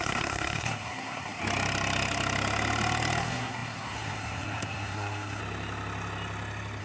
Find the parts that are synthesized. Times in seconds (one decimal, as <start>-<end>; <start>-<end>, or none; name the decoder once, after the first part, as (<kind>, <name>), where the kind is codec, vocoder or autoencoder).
0.0-1.4 (codec, SNAC); 3.2-5.4